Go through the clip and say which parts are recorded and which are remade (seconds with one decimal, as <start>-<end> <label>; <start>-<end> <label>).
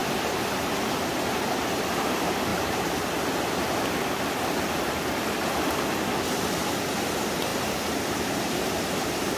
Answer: 0.0-1.8 remade; 1.8-2.5 recorded; 2.5-3.3 remade; 3.3-7.5 recorded; 7.5-9.4 remade